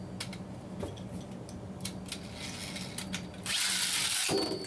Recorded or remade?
recorded